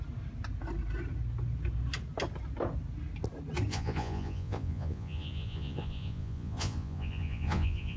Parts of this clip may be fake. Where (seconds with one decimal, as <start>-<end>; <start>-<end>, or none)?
3.7-8.0